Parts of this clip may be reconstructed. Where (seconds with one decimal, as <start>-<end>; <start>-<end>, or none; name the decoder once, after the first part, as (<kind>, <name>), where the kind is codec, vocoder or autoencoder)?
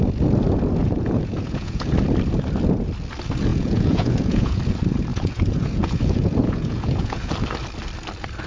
0.8-1.9 (vocoder, Vocos); 3.5-4.6; 5.1-7.3